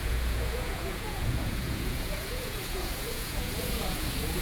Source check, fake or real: fake